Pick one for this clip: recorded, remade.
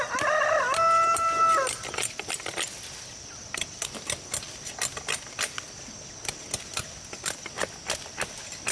recorded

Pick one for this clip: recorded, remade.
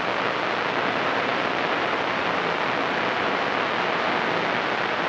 recorded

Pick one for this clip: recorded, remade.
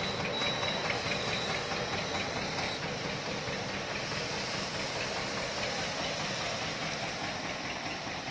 recorded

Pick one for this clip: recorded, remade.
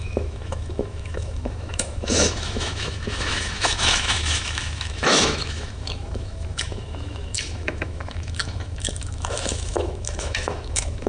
remade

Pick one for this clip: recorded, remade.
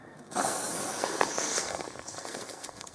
remade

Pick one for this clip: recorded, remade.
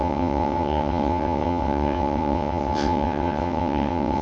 remade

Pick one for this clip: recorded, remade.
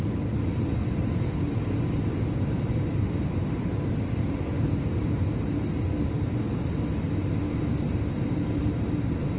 recorded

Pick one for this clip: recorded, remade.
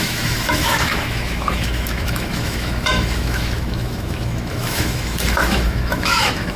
remade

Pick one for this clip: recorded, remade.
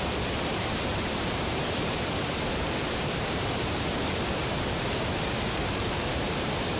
remade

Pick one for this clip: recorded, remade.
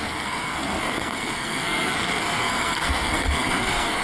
remade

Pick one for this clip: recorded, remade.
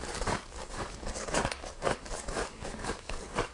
remade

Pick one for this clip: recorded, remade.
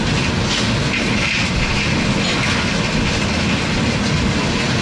recorded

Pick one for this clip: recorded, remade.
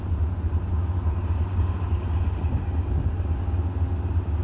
recorded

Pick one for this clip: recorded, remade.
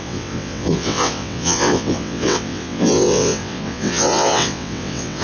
remade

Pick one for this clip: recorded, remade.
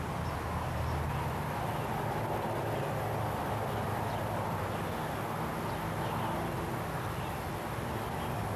recorded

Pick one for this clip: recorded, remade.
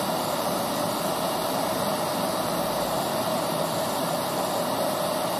remade